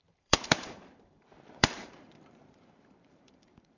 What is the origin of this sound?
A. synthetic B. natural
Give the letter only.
A